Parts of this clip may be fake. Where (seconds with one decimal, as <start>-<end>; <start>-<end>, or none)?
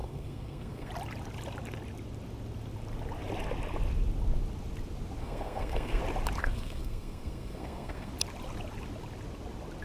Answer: 0.0-0.9; 5.2-6.0; 6.4-8.1